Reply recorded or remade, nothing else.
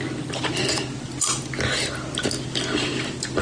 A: recorded